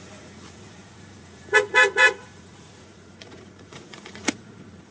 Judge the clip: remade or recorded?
remade